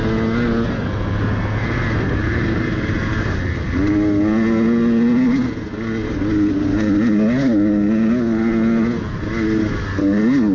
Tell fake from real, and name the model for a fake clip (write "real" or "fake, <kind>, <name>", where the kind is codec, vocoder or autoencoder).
real